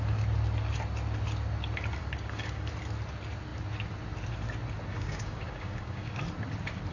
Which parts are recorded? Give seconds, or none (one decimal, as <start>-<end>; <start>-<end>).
0.0-2.0; 2.7-4.9; 6.2-6.9